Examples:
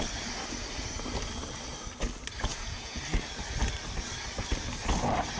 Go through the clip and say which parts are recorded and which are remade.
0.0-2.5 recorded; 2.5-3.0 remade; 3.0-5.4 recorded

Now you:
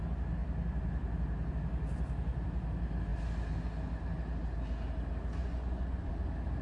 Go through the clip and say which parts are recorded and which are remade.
0.0-5.4 recorded; 5.4-6.1 remade; 6.1-6.6 recorded

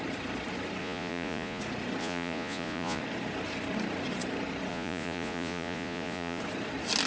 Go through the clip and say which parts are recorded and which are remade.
0.0-0.8 recorded; 0.8-1.6 remade; 1.6-2.0 recorded; 2.0-3.0 remade; 3.0-4.7 recorded; 4.7-6.4 remade; 6.4-7.1 recorded

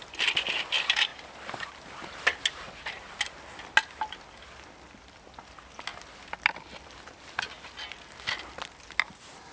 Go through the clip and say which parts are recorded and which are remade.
0.0-9.5 recorded

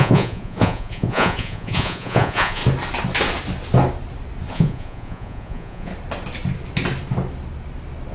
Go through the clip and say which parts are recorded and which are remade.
0.0-2.6 remade; 2.6-4.5 recorded; 4.5-5.9 remade; 5.9-8.1 recorded